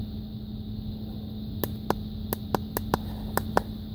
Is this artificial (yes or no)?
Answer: no